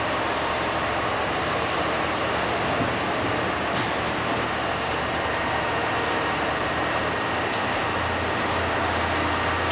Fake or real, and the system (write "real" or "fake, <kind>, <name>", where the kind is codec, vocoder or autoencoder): real